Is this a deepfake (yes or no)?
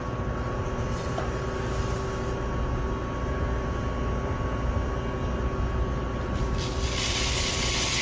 no